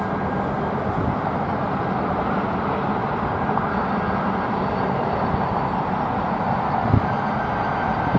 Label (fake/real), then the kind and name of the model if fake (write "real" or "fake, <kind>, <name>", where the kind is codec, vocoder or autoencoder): real